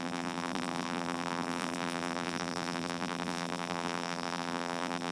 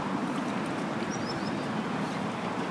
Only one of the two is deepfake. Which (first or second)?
first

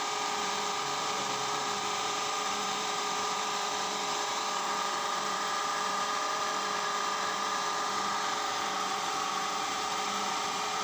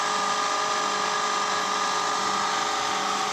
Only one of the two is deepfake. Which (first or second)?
first